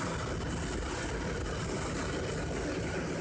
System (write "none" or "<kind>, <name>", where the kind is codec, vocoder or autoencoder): none